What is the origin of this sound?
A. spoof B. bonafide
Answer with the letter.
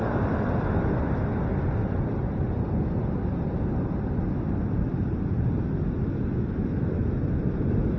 B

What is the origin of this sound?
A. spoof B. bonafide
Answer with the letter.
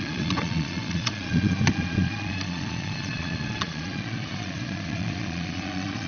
A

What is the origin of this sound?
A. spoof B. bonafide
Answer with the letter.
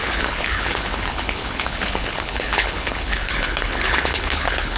A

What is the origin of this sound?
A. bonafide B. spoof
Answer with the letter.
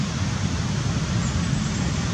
A